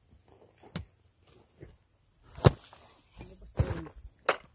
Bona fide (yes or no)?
yes